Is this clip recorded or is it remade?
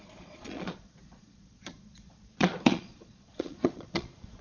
remade